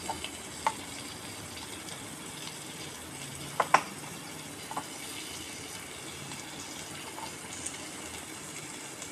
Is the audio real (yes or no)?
yes